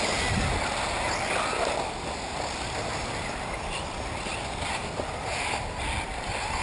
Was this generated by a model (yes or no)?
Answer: no